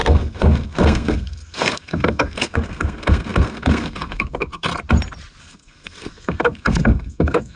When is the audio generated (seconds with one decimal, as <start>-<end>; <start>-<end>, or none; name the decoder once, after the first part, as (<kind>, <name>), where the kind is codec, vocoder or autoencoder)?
0.0-4.7 (codec, SNAC); 5.4-7.6